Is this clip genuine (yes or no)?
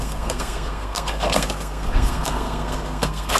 no